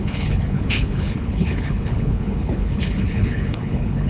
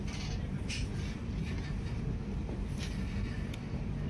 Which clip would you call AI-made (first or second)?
first